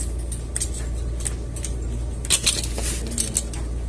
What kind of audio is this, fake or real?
real